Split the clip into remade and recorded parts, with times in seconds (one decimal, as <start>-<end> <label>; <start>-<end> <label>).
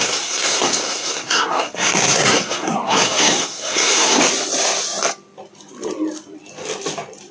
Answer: 0.0-4.2 remade; 4.2-7.3 recorded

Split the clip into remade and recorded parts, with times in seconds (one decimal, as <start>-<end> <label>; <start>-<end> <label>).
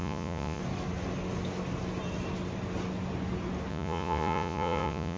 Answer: 0.0-0.6 remade; 0.6-3.7 recorded; 3.7-5.2 remade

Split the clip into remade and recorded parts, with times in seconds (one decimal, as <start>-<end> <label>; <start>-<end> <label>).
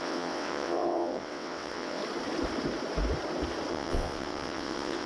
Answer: 0.0-2.0 remade; 2.0-3.7 recorded; 3.7-5.1 remade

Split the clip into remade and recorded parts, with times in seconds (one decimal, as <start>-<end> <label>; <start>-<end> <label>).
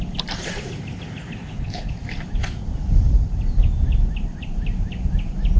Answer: 0.0-1.4 recorded; 1.4-1.9 remade; 1.9-5.6 recorded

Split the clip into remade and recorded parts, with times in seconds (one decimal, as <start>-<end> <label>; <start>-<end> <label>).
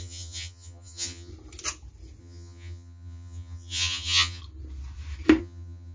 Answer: 0.0-1.3 remade; 1.3-2.2 recorded; 2.2-4.4 remade; 4.4-5.4 recorded; 5.4-5.9 remade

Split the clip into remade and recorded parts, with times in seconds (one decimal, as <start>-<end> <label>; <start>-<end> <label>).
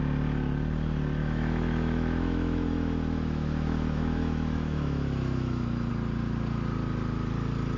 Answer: 0.0-1.2 recorded; 1.2-5.9 remade; 5.9-7.8 recorded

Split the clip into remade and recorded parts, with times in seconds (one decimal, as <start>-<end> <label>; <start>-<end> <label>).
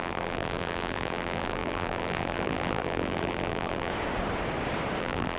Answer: 0.0-3.9 remade; 3.9-5.0 recorded; 5.0-5.4 remade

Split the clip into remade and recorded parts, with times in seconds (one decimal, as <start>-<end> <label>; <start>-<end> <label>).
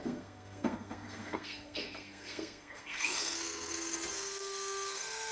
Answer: 0.0-5.3 remade